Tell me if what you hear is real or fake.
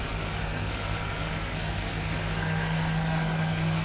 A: fake